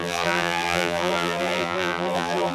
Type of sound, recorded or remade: remade